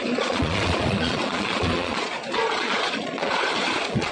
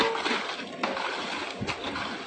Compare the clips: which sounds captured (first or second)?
second